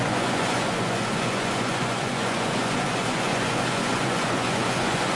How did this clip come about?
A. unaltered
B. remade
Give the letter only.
B